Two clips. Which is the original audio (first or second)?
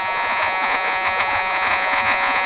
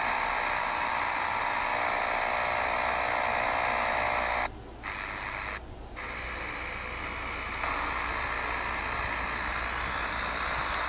second